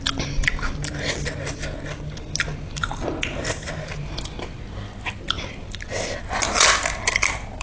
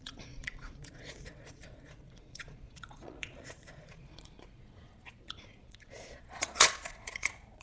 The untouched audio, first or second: first